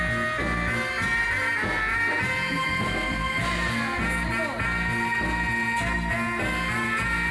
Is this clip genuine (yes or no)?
yes